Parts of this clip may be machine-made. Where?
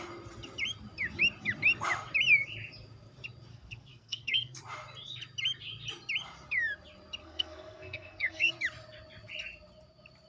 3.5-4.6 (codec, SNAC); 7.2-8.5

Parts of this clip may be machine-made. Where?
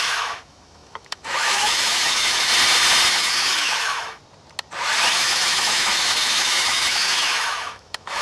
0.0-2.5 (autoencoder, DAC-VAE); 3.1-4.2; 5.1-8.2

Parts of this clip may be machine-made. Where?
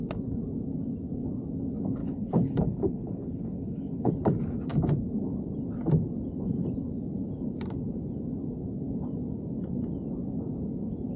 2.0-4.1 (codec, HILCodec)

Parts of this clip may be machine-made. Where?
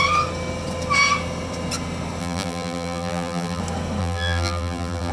2.2-3.6 (vocoder, BigVGAN v2); 4.0-5.1